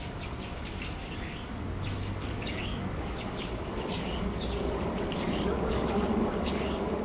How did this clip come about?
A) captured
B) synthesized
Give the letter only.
B